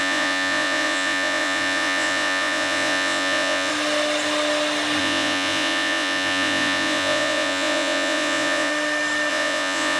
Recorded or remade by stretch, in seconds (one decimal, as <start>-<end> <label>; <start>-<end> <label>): 0.0-3.7 remade; 3.7-5.0 recorded; 5.0-8.7 remade; 8.7-9.3 recorded; 9.3-10.0 remade